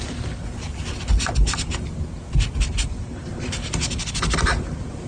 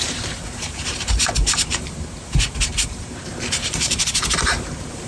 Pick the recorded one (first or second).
first